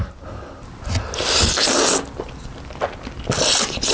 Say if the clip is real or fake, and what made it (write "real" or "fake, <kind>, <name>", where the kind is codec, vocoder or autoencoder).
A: real